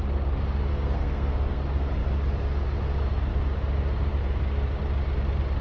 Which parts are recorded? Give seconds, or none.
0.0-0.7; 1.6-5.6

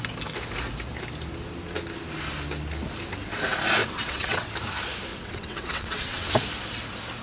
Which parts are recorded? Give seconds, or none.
0.0-3.8; 4.5-5.1; 6.3-7.2

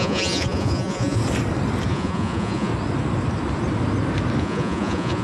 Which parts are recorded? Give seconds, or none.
1.2-1.9; 2.7-4.4

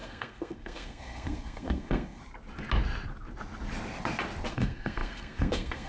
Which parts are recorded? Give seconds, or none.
2.2-4.5

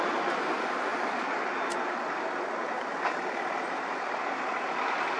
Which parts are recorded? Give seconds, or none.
0.0-5.2

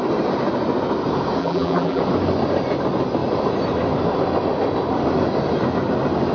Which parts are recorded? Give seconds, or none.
0.0-1.4; 2.0-6.3